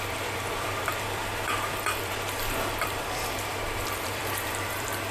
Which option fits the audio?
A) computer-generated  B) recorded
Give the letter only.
A